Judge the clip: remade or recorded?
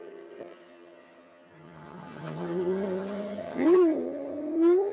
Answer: remade